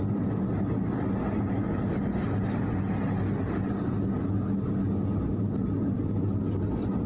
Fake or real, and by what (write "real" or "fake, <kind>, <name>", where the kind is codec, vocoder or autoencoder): real